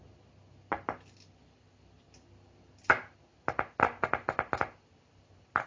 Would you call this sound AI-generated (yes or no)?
no